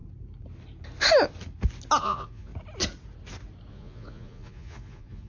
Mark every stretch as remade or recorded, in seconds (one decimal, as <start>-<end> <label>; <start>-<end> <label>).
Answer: 0.0-2.0 recorded; 2.0-2.5 remade; 2.5-3.7 recorded; 3.7-5.3 remade